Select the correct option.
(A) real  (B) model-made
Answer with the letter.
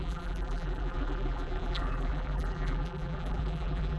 B